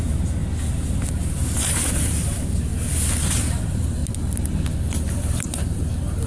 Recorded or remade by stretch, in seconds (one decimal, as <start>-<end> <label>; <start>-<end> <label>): 0.0-0.4 remade; 0.4-1.6 recorded; 1.6-2.7 remade; 2.7-3.6 recorded; 3.6-4.0 remade; 4.0-5.2 recorded; 5.2-6.3 remade